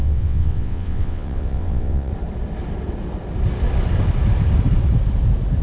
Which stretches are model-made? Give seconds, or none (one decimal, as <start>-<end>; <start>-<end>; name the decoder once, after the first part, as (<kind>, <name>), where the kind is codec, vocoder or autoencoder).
0.0-2.1 (vocoder, WaveNeXt)